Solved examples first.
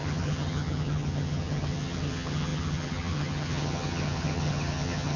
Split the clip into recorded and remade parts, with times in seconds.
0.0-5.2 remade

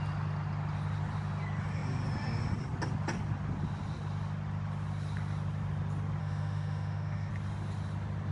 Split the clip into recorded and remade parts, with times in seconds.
0.0-6.2 recorded; 6.2-7.3 remade; 7.3-8.3 recorded

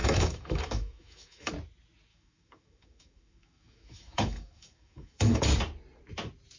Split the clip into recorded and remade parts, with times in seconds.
0.0-1.5 remade; 1.5-2.1 recorded; 2.1-5.4 remade; 5.4-6.6 recorded

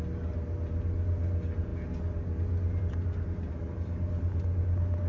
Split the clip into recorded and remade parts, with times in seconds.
0.0-5.1 recorded

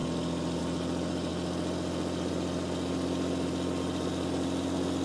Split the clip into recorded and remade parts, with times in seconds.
0.0-5.0 recorded